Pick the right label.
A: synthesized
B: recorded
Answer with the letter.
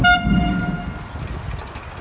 B